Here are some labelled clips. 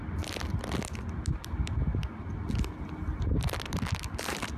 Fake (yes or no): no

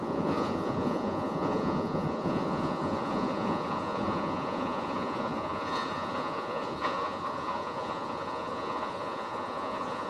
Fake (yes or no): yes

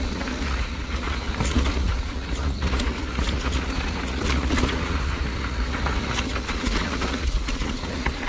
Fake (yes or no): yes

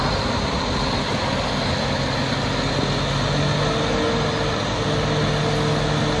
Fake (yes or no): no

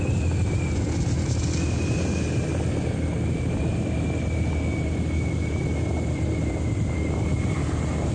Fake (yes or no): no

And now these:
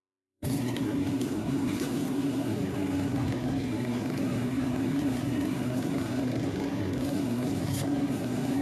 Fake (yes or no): yes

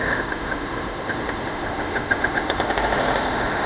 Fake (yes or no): yes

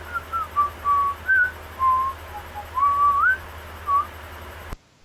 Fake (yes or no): no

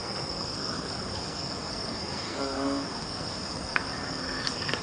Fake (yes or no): yes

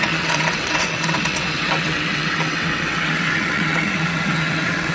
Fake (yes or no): yes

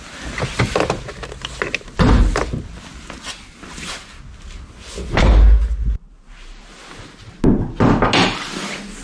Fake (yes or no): no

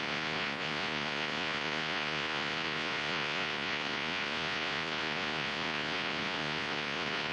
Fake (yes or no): yes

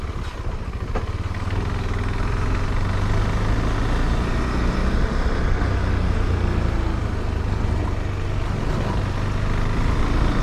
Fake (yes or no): no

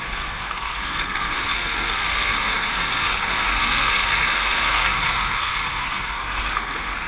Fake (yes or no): yes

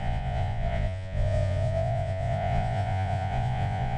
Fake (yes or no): yes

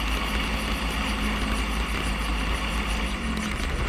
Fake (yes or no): no